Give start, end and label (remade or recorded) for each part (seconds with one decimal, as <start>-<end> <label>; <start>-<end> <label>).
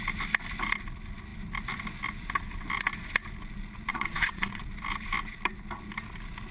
0.0-3.9 recorded; 3.9-4.6 remade; 4.6-6.5 recorded